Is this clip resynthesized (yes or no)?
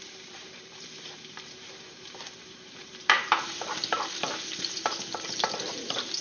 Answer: yes